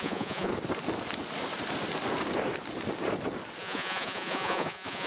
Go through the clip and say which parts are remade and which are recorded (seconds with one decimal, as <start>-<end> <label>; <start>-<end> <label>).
0.0-0.5 remade; 0.5-3.6 recorded; 3.6-5.1 remade